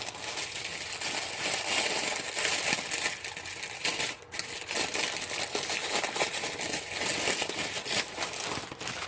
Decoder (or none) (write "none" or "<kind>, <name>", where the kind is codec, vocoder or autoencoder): none